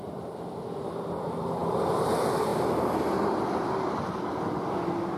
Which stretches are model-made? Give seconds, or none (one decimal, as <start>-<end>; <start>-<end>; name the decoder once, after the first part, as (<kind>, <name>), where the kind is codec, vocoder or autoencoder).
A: 1.6-2.1 (vocoder, BigVGAN v2)